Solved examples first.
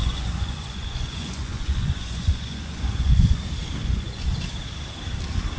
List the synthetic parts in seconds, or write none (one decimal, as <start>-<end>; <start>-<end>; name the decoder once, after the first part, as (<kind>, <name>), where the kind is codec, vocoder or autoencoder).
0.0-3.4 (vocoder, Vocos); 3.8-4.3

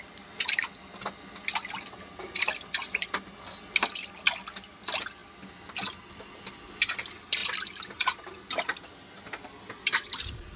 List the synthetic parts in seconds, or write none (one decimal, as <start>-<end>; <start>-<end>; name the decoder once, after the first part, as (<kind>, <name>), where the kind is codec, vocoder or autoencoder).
7.4-8.0 (vocoder, BigVGAN v2)

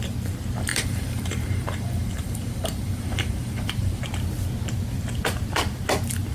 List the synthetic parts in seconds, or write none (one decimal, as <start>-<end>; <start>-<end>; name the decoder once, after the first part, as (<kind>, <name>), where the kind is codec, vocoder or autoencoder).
0.7-4.0 (vocoder, BigVGAN v2)

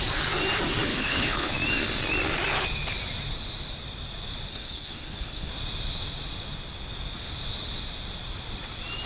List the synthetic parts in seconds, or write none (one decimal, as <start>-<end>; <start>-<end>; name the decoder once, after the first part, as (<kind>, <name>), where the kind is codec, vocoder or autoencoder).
0.9-1.5 (codec, HILCodec); 4.5-5.5

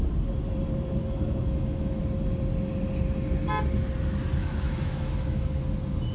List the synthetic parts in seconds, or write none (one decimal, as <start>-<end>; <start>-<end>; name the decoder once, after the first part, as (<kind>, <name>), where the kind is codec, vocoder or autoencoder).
1.0-2.0 (autoencoder, DAC-VAE); 4.4-5.6